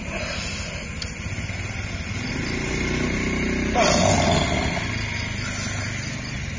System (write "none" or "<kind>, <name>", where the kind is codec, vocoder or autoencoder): none